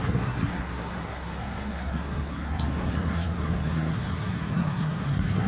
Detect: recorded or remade remade